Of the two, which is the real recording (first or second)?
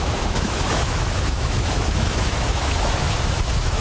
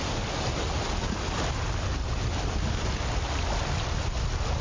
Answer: second